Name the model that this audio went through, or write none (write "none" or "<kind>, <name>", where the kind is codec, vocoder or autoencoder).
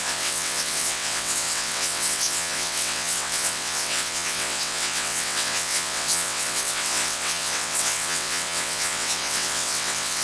vocoder, WaveNeXt